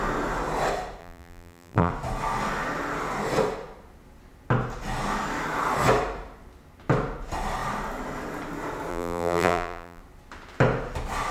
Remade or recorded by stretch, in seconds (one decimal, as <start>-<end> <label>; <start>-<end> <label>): 0.0-1.0 recorded; 1.0-1.9 remade; 1.9-8.9 recorded; 8.9-10.0 remade; 10.0-11.3 recorded